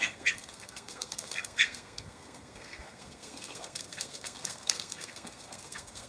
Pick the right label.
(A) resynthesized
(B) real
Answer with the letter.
A